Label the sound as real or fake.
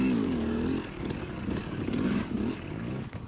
fake